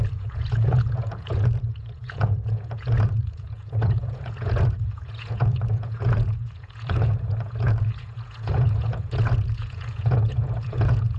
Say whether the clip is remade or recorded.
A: remade